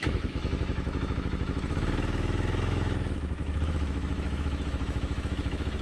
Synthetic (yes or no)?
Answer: yes